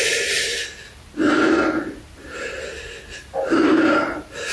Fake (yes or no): no